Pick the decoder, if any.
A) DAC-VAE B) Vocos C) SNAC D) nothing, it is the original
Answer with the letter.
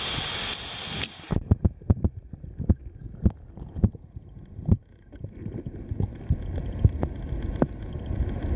D